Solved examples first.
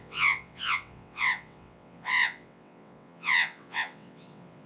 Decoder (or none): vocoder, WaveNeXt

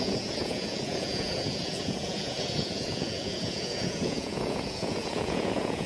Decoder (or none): vocoder, Vocos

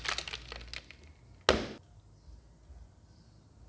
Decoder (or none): none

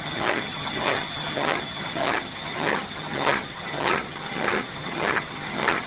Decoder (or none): vocoder, HiFi-GAN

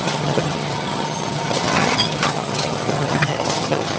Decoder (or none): vocoder, HiFi-GAN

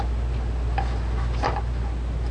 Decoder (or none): none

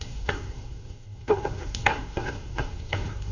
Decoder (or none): codec, SNAC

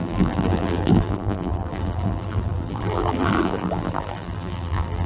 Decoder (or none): vocoder, BigVGAN v2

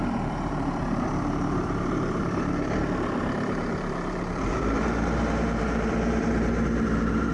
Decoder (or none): vocoder, BigVGAN v2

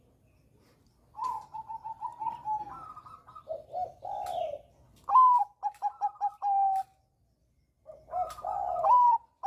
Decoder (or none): none